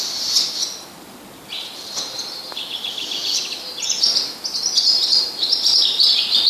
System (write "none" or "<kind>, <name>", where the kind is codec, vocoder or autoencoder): none